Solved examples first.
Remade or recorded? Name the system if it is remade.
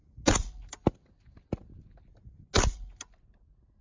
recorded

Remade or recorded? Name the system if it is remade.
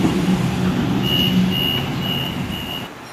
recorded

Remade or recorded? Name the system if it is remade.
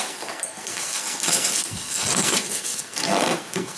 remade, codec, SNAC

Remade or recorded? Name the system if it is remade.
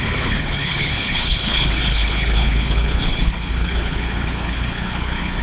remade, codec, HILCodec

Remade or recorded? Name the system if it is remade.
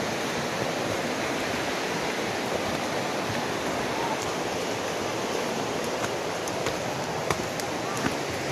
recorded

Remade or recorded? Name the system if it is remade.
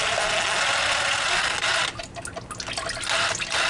recorded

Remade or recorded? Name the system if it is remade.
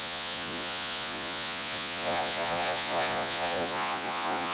remade, vocoder, Vocos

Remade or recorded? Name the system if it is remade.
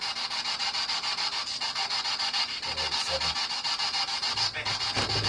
recorded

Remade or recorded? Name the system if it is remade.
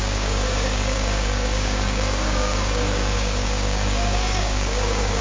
remade, codec, DAC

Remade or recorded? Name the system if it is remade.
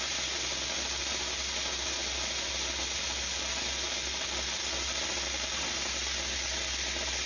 recorded